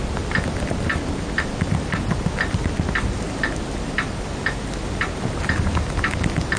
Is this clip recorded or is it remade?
recorded